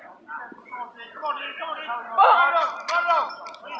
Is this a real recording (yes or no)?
yes